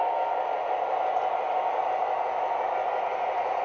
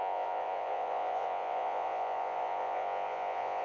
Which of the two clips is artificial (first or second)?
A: second